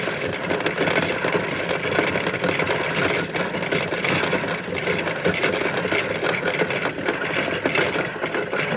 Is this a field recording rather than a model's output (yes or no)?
yes